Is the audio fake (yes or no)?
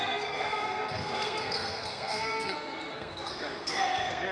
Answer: yes